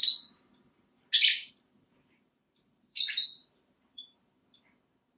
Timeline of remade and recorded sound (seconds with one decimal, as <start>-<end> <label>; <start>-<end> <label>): 0.0-1.3 recorded; 1.3-4.4 remade; 4.4-5.2 recorded